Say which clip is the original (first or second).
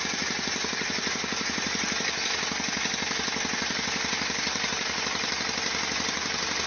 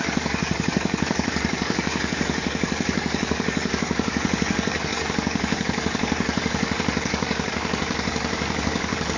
first